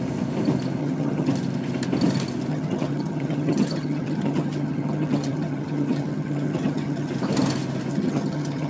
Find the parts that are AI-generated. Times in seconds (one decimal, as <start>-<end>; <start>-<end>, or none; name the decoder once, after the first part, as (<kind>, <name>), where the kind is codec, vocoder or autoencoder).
0.8-1.3 (vocoder, HiFi-GAN); 2.5-7.1; 7.9-8.7